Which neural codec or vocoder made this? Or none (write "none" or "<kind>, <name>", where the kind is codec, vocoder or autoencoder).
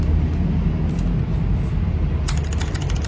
none